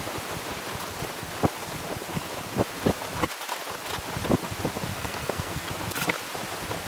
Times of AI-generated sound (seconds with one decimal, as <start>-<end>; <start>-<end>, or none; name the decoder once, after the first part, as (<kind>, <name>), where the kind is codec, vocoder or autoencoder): 4.9-5.7 (codec, SNAC)